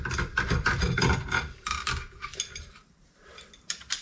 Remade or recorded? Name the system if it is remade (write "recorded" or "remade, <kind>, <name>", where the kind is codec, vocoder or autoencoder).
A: recorded